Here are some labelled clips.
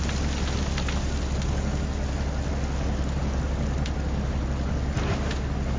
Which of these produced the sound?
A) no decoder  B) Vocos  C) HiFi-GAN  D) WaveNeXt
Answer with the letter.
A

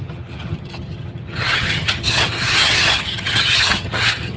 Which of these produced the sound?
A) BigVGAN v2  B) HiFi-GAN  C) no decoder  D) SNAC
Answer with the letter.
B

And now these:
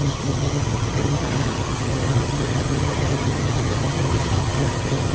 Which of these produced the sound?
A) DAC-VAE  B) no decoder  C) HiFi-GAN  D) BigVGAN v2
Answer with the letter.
C